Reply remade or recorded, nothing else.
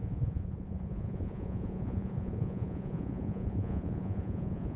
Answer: remade